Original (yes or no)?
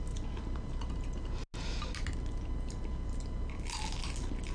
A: yes